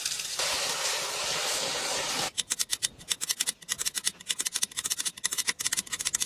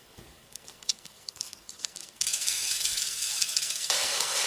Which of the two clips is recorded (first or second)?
first